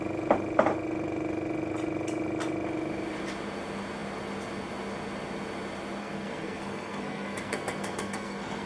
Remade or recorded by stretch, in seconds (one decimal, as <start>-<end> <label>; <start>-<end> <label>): 0.0-6.0 recorded; 6.0-8.7 remade